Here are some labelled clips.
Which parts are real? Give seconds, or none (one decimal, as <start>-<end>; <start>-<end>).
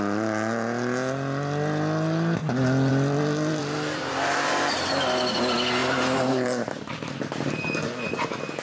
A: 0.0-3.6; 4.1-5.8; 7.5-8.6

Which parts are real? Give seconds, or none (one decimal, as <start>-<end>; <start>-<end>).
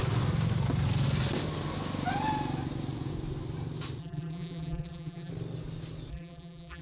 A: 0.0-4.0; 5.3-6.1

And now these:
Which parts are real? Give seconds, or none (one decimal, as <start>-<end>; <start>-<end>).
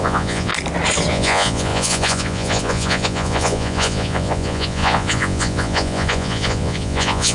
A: 0.5-1.1